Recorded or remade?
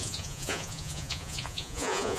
remade